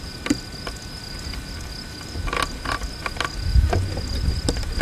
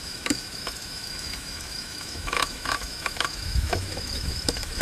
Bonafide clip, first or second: first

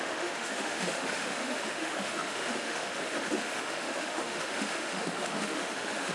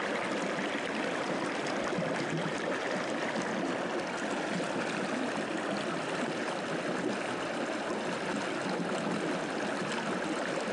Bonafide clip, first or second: second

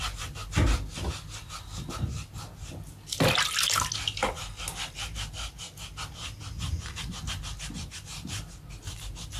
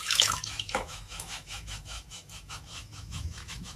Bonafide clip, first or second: first